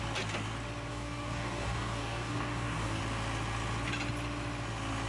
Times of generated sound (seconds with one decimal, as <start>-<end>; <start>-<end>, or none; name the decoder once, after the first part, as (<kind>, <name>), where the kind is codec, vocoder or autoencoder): 0.9-3.0 (codec, DAC)